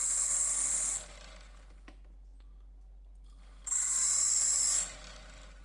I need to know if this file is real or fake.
real